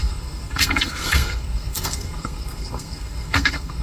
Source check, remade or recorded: remade